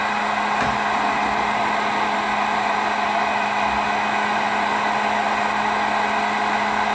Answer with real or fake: real